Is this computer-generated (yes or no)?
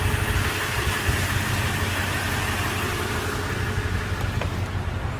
no